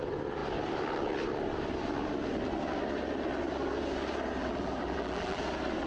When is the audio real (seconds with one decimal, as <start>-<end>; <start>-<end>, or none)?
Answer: 0.0-4.4; 5.4-5.9